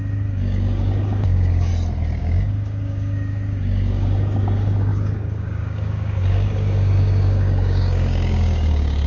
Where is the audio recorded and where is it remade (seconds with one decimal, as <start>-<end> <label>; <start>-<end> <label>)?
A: 0.0-1.7 remade; 1.7-2.2 recorded; 2.2-9.1 remade